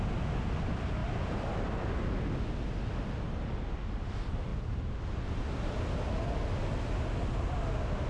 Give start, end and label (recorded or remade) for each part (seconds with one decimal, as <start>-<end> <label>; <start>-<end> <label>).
0.0-8.1 recorded